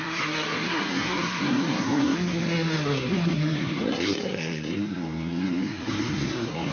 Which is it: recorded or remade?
remade